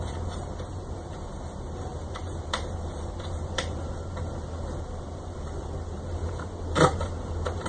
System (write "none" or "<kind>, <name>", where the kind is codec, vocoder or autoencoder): vocoder, BigVGAN v2